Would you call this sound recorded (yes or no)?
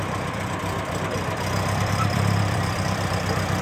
no